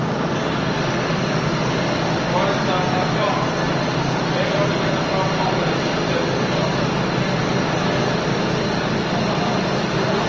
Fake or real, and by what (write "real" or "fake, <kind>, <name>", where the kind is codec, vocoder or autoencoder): real